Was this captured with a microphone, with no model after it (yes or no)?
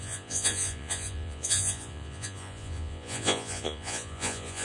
no